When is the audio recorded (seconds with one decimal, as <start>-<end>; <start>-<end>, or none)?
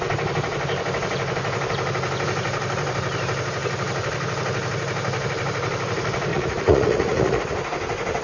0.0-6.3; 7.4-8.2